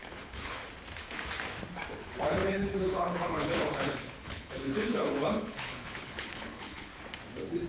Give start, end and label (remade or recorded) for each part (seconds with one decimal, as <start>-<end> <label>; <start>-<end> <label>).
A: 0.0-0.6 remade; 0.6-2.0 recorded; 2.0-6.9 remade; 6.9-7.7 recorded